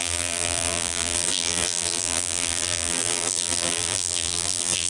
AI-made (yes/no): yes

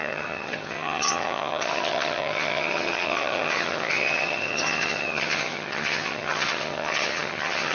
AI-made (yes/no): yes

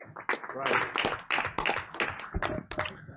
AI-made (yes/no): no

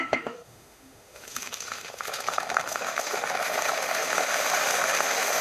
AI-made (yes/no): yes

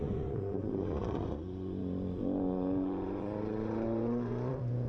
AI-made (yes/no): yes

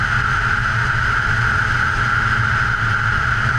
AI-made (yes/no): no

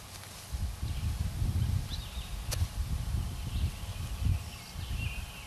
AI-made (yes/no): no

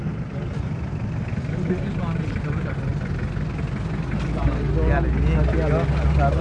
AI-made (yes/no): no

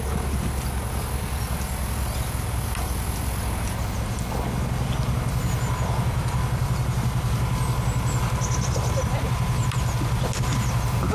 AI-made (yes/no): no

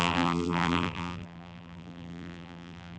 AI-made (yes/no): yes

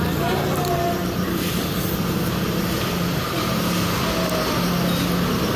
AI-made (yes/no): no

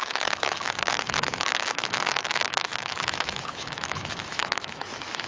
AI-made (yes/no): yes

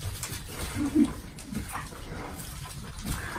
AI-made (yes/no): no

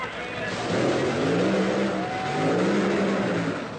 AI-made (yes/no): no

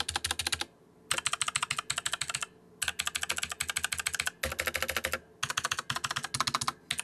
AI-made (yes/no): no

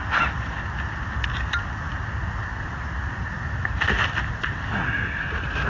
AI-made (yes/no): no